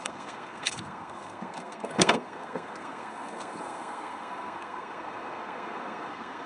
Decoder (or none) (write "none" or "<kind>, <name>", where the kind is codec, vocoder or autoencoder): codec, SNAC